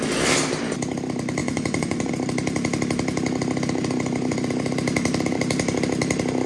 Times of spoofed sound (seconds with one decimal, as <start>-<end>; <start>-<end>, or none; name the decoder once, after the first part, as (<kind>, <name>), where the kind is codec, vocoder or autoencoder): 1.4-2.1 (vocoder, Vocos)